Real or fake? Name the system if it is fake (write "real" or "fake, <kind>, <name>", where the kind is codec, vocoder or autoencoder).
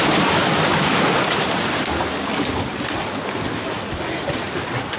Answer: real